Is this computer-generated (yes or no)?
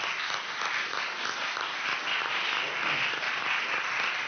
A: no